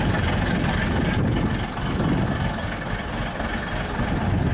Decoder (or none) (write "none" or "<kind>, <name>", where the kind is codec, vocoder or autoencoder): none